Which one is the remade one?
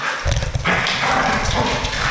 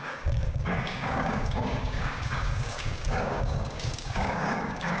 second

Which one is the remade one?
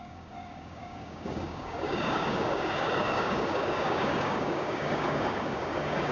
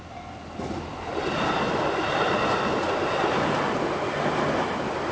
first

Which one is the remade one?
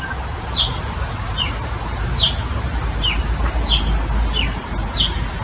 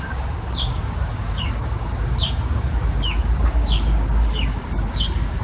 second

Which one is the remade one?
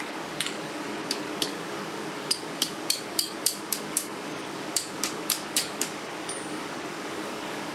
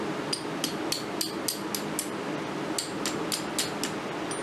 first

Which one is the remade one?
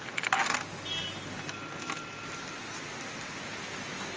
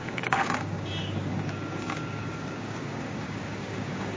second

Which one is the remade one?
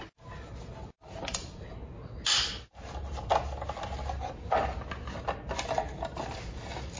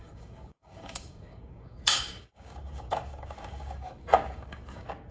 second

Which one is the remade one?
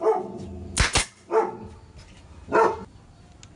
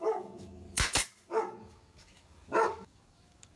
second